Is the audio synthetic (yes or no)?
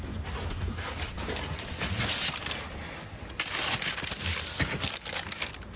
no